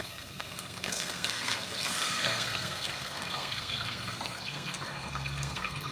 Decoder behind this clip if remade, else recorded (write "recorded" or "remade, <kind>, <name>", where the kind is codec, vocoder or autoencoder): remade, codec, SNAC